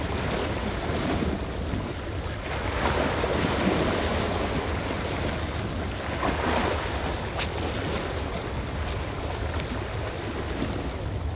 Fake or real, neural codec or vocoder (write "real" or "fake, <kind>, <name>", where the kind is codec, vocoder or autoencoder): real